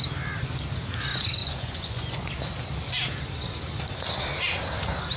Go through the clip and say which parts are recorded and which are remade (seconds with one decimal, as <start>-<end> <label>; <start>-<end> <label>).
0.0-1.4 recorded; 1.4-2.3 remade; 2.3-5.2 recorded